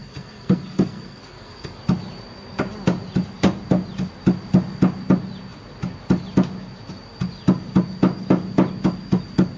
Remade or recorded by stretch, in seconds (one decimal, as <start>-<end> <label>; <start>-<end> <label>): 0.0-1.8 remade; 1.8-9.6 recorded